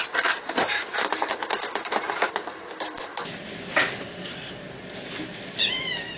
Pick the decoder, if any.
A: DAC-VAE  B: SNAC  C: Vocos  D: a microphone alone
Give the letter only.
D